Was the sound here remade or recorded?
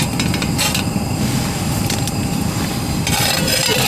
remade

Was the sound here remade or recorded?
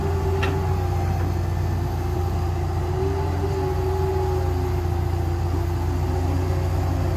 recorded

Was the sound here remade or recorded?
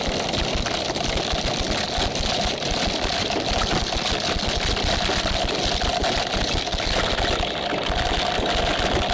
recorded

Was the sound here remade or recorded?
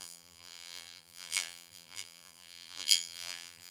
remade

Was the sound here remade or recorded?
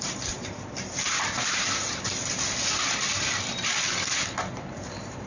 remade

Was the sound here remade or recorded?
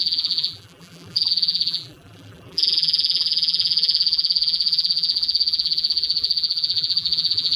remade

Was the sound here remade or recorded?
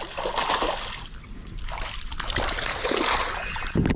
recorded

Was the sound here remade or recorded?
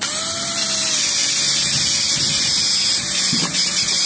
recorded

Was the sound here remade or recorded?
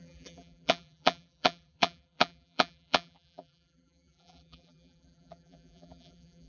remade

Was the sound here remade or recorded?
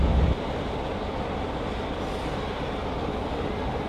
recorded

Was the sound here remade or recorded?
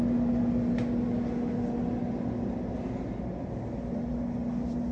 recorded